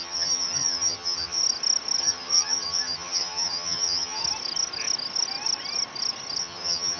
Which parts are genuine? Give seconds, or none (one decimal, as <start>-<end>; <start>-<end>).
1.4-2.0; 4.2-6.4